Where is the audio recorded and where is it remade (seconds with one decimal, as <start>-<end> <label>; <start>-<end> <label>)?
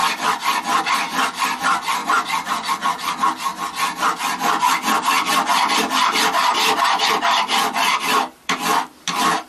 0.0-3.5 remade; 3.5-5.3 recorded; 5.3-9.5 remade